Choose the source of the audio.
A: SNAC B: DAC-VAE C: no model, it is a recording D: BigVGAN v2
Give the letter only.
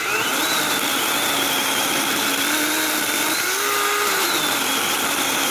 C